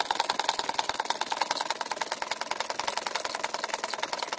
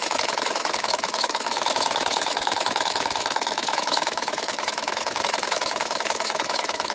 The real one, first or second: first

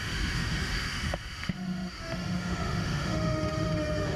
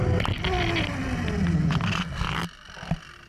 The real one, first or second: second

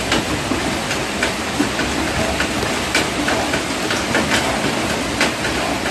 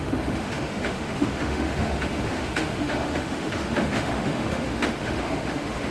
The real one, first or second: first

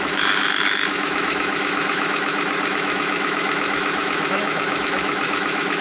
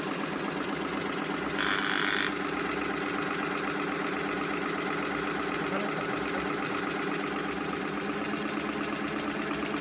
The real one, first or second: second